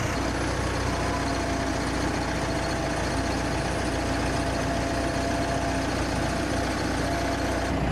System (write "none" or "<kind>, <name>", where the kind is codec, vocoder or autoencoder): none